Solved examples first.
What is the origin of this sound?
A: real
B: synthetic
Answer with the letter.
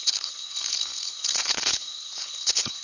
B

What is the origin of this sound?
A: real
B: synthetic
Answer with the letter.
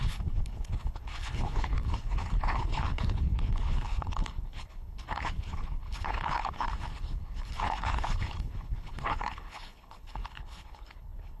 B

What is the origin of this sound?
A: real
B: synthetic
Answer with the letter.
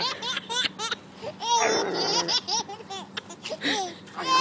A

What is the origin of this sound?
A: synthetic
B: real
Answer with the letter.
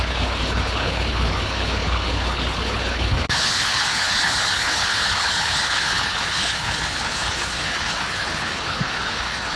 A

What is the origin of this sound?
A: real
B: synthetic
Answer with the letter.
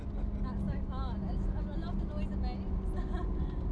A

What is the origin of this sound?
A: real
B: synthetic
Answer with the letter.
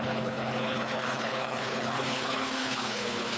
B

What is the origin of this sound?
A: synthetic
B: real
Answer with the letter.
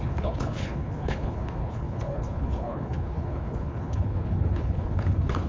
A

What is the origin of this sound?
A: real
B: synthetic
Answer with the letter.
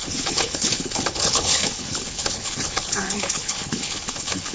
B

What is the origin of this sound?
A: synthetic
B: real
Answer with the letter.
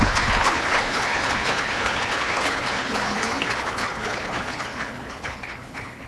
A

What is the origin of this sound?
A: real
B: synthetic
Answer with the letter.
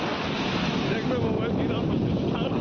A